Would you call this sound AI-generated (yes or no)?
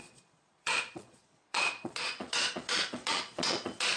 yes